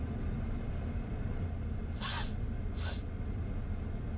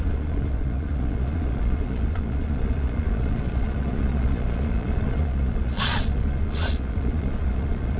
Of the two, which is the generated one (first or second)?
second